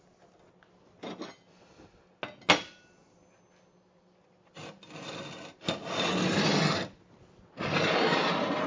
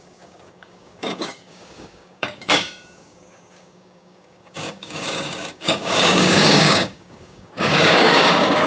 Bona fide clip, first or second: first